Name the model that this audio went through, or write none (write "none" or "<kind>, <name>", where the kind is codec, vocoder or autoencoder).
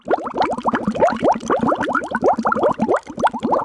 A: none